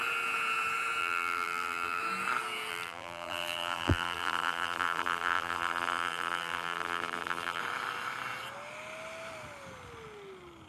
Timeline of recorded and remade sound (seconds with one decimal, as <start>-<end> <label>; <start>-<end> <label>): 0.0-1.0 recorded; 1.0-2.0 remade; 2.0-2.7 recorded; 2.7-7.6 remade; 7.6-10.7 recorded